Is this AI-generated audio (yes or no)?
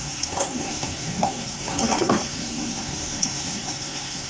yes